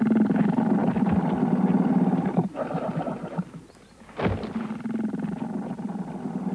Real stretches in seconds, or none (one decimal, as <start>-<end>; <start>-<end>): 0.0-6.5